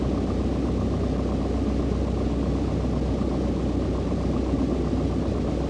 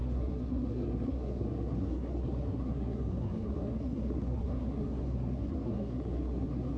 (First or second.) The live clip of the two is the first